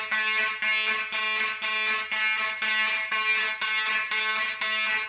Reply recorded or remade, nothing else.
recorded